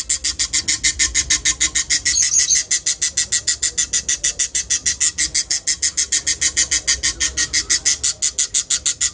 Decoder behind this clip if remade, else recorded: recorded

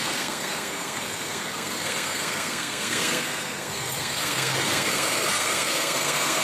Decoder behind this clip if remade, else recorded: remade, codec, SNAC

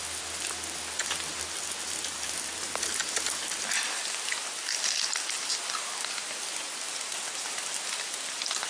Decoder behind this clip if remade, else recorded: recorded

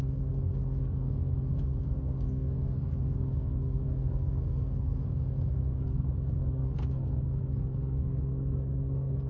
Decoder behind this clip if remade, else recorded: remade, codec, SNAC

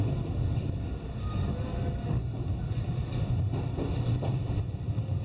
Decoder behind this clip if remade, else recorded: recorded